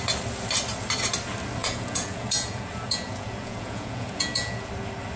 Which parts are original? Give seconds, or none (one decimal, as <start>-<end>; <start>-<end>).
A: 0.0-1.6; 4.7-5.2